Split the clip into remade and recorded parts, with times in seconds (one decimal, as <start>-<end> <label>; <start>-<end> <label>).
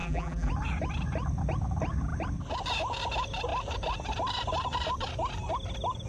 0.0-0.5 remade; 0.5-6.1 recorded